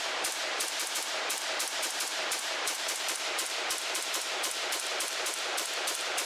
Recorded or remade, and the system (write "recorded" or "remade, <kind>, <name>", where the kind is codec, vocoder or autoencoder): remade, vocoder, BigVGAN v2